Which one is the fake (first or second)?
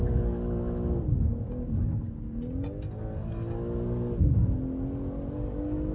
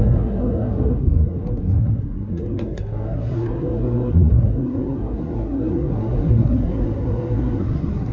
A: second